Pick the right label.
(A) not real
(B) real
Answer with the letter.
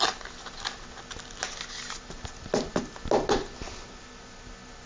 B